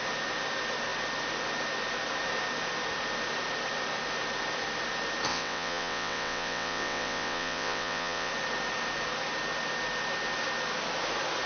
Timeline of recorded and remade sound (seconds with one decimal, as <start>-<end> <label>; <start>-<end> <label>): 0.0-5.3 recorded; 5.3-8.3 remade; 8.3-11.5 recorded